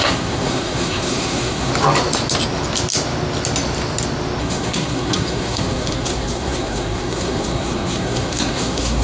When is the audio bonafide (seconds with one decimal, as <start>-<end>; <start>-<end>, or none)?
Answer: 1.7-4.4